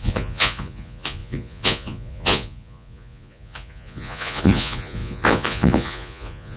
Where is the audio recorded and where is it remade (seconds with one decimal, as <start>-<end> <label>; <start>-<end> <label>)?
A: 0.0-6.6 remade